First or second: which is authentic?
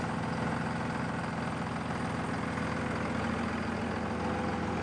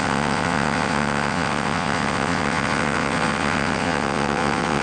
first